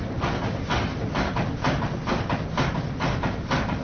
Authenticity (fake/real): real